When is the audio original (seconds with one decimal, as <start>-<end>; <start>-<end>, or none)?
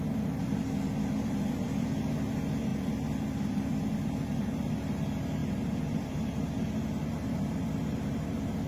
0.0-5.4; 6.4-8.7